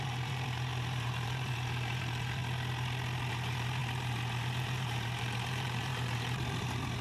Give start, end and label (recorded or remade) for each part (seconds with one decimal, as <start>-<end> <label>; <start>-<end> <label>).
0.0-2.4 remade; 2.4-3.3 recorded; 3.3-7.0 remade